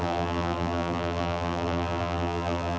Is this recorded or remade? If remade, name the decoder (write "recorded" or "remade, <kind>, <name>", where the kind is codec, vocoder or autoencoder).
remade, vocoder, BigVGAN v2